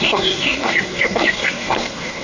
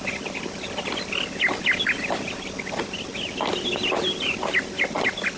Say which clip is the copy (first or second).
first